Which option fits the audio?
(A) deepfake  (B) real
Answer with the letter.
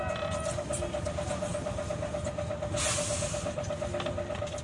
B